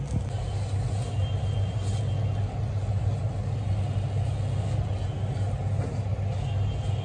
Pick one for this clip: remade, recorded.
recorded